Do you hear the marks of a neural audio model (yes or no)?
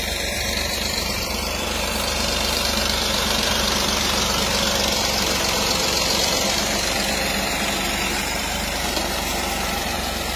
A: yes